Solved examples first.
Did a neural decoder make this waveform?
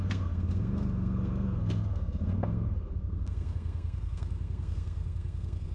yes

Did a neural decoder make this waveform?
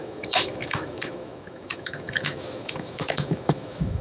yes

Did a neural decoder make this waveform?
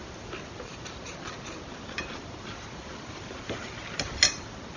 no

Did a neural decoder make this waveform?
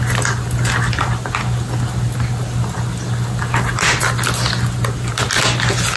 no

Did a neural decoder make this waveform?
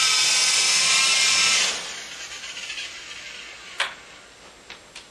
no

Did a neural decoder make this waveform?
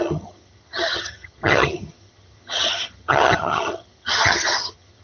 yes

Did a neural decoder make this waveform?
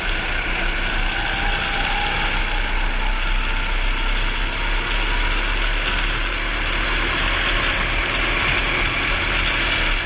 no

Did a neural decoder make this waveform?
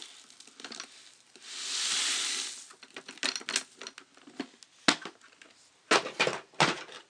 no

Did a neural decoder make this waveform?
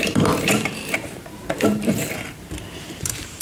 yes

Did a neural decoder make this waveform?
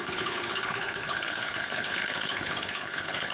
yes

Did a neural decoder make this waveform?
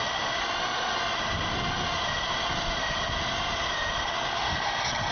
no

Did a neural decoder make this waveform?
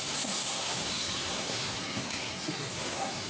yes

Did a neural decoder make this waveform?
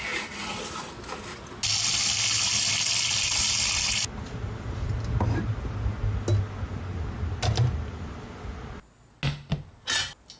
no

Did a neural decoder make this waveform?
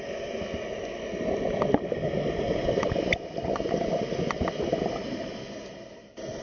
no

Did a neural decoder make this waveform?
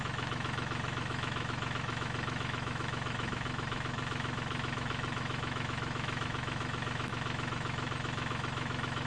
yes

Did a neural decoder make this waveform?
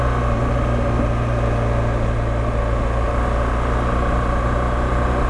no